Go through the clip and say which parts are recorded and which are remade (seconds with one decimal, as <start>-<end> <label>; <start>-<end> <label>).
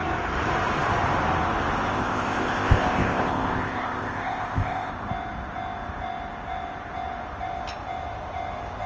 0.0-1.9 recorded; 1.9-4.9 remade; 4.9-8.9 recorded